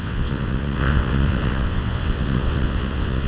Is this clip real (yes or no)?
no